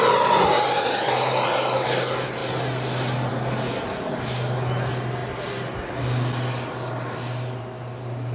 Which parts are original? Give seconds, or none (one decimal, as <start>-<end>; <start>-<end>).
0.0-8.3